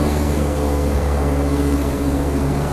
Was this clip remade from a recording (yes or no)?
yes